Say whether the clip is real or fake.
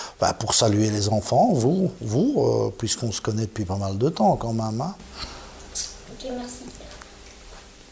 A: real